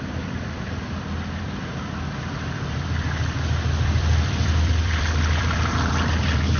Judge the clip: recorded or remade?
remade